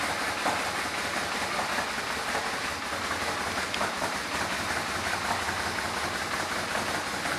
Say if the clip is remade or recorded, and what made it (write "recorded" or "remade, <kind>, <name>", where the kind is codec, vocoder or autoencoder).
recorded